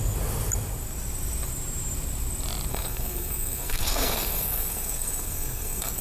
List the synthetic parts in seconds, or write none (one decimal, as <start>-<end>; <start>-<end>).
2.7-6.0